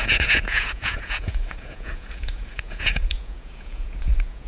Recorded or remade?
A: remade